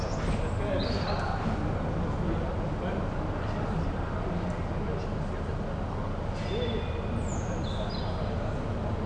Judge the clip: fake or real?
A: real